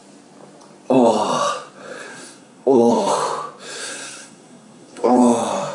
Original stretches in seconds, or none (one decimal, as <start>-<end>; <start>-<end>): 0.0-2.1; 3.1-3.8; 5.2-5.7